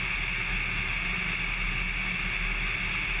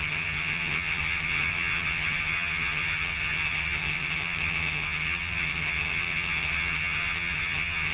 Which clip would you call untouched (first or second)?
first